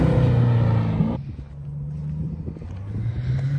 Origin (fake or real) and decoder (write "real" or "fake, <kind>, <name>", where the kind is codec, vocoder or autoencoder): real